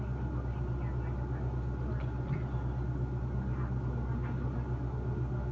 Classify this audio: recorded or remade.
recorded